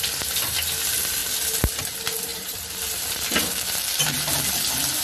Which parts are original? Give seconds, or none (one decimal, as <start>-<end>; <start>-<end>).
0.0-2.3; 4.0-5.0